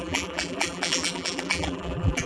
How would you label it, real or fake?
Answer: fake